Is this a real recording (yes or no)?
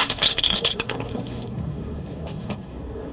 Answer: no